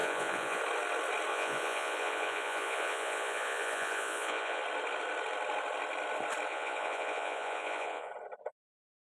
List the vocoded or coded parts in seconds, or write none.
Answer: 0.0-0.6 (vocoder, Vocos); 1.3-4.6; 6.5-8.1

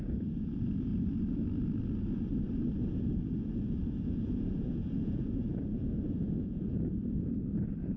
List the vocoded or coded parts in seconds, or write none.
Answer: 0.0-0.9 (vocoder, Vocos); 3.4-8.0

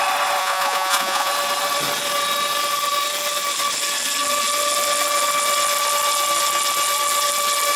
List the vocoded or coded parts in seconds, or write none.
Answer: 0.4-1.3 (vocoder, Vocos)

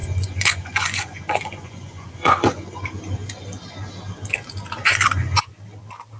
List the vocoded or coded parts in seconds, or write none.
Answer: 0.0-2.8 (vocoder, Vocos); 4.8-5.5

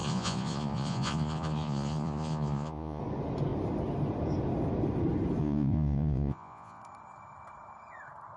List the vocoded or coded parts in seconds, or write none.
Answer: 0.0-3.0 (vocoder, Vocos); 5.4-6.8